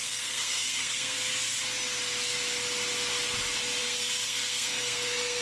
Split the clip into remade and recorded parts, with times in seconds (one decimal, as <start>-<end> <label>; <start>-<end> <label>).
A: 0.0-1.3 remade; 1.3-3.8 recorded; 3.8-5.4 remade